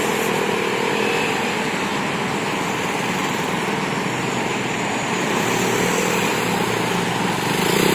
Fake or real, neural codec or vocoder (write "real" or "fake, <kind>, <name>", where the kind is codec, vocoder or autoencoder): real